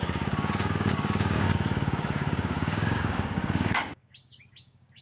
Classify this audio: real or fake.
fake